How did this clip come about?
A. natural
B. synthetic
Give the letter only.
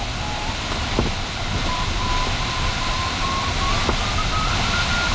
A